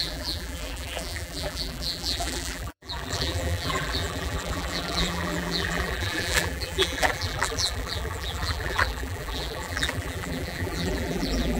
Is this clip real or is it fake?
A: fake